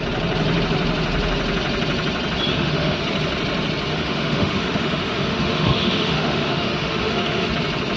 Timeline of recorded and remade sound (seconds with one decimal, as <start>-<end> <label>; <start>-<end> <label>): 0.0-2.5 recorded; 2.5-3.0 remade; 3.0-3.9 recorded; 3.9-7.5 remade; 7.5-8.0 recorded